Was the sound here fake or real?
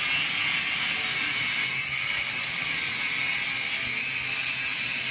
real